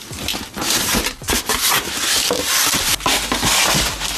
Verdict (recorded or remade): recorded